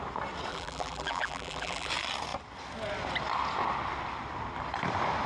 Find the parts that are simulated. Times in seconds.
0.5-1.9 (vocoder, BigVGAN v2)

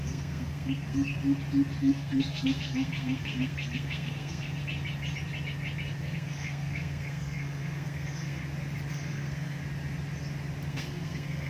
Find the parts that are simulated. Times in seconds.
0.0-1.1 (codec, SNAC); 1.8-4.6; 6.0-8.4; 8.9-9.6; 10.7-11.5

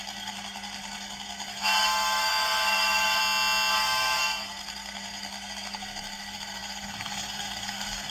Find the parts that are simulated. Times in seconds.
0.0-3.2 (codec, SNAC); 3.7-8.1

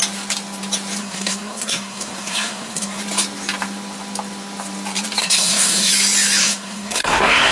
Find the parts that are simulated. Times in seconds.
1.0-3.0 (codec, SNAC); 5.2-5.9; 6.4-7.5

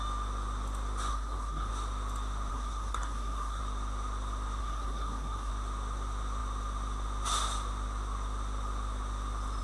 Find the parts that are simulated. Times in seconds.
1.1-1.7 (codec, SNAC); 2.5-3.6; 4.6-5.5